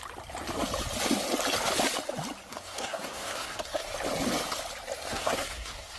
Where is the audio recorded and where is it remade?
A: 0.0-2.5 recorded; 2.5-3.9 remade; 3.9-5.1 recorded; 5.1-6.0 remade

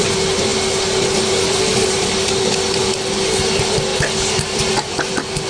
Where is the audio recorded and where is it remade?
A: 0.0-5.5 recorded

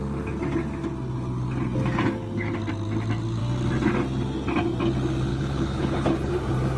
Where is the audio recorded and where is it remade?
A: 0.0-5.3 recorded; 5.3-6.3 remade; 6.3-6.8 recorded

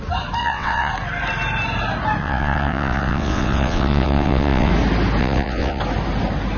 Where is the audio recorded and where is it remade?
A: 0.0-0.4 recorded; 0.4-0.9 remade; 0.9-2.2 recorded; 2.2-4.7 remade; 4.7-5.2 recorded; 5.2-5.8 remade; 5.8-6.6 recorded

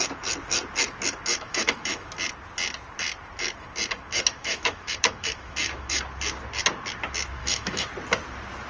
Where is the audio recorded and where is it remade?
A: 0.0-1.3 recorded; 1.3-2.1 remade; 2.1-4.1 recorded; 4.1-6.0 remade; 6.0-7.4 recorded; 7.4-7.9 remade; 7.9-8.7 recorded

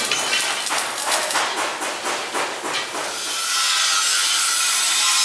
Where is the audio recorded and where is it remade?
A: 0.0-1.7 remade; 1.7-4.8 recorded; 4.8-5.2 remade